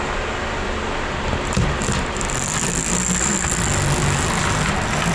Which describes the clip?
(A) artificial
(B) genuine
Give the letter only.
B